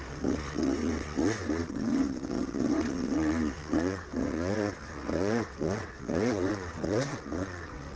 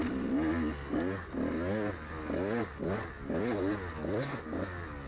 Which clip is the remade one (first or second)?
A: first